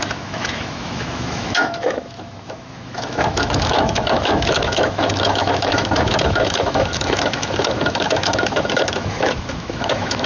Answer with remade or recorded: remade